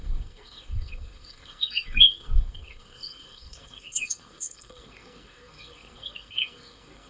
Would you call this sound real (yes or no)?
no